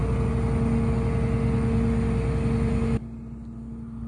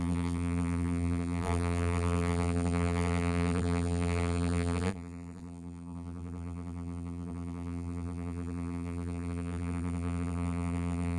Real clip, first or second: first